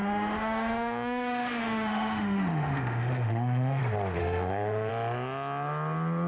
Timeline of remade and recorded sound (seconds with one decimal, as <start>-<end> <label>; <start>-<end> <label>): 0.0-3.8 remade; 3.8-4.2 recorded; 4.2-4.9 remade; 4.9-6.3 recorded